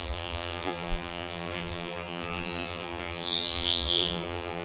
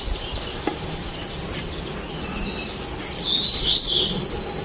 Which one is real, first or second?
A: second